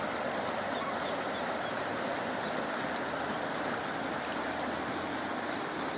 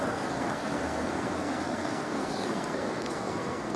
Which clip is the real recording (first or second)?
first